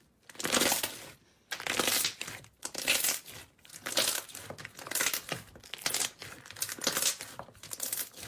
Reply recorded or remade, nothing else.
recorded